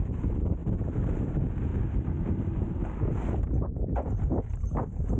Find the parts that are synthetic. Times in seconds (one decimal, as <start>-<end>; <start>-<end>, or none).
0.0-0.6; 1.2-1.7; 4.8-5.2